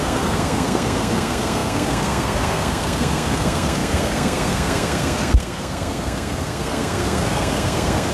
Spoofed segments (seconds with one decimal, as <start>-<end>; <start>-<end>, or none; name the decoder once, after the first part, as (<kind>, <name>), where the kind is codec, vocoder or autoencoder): 0.0-8.1 (codec, SNAC)